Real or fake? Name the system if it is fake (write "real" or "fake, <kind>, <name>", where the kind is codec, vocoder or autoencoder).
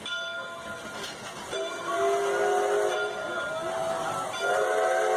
real